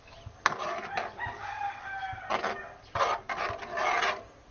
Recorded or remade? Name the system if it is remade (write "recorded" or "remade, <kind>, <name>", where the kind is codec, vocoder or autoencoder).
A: recorded